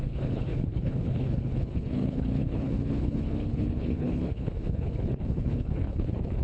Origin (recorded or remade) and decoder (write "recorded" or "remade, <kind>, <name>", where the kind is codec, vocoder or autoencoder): remade, codec, HILCodec